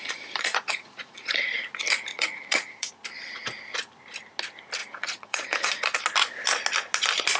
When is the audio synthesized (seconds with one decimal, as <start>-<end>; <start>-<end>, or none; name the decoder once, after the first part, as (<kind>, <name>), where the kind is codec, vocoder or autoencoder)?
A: 0.0-1.5 (vocoder, Vocos); 2.1-2.9; 4.8-6.0